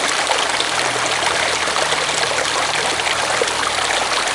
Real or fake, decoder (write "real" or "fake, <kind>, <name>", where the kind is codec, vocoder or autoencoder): real